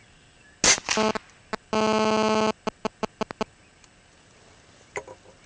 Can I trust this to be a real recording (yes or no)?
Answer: yes